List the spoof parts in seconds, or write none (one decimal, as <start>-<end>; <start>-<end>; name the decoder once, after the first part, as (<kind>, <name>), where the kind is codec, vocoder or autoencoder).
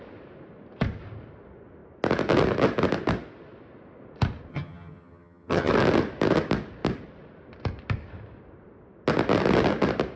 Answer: 4.5-5.7 (vocoder, HiFi-GAN)